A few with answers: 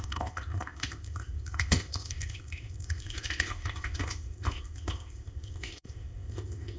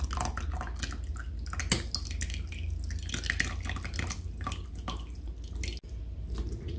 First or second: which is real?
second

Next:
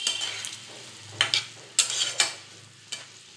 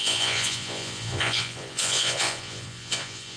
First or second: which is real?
first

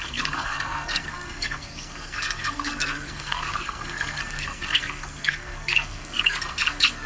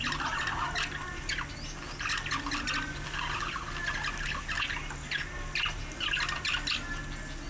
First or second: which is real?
second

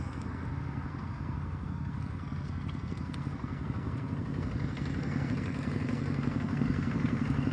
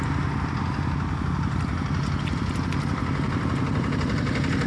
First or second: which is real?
second